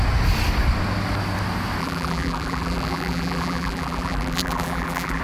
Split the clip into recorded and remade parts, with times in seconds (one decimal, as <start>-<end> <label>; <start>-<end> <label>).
0.0-1.8 recorded; 1.8-5.2 remade